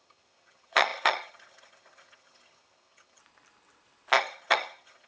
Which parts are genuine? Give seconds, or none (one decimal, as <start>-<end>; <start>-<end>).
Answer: 3.2-4.2